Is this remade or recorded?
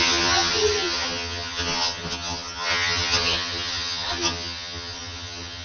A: remade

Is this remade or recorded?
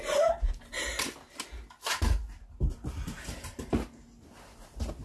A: recorded